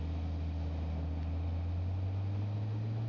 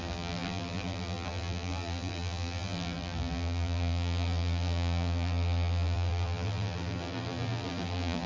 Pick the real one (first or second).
first